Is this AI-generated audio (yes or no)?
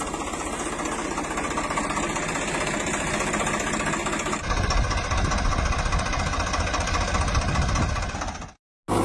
no